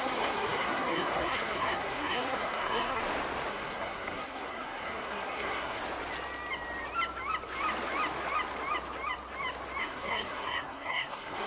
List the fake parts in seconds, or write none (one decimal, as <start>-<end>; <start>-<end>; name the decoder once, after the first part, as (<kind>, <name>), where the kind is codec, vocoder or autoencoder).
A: 0.0-3.0 (codec, SNAC); 3.5-5.8; 9.8-11.5